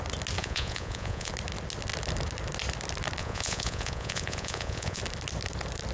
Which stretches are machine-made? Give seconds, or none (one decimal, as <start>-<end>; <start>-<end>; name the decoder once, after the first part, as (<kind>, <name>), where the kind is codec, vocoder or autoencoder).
0.4-1.3 (vocoder, Vocos); 3.2-5.0